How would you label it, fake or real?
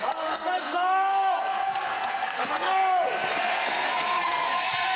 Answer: fake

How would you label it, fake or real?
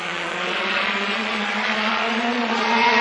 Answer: fake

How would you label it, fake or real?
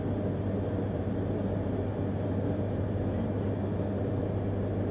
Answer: real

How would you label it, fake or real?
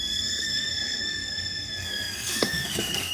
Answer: fake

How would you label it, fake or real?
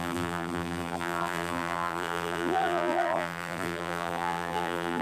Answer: fake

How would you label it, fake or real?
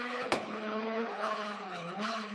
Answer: fake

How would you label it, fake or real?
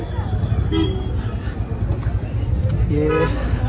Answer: real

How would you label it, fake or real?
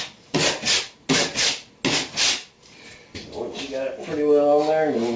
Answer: real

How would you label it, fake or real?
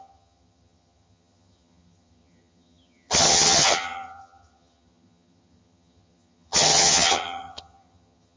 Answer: fake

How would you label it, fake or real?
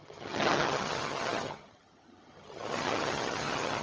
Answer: fake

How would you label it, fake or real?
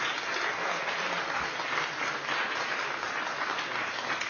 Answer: real